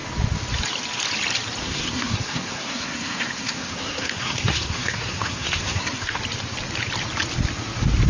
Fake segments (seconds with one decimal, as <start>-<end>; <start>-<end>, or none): 1.6-6.2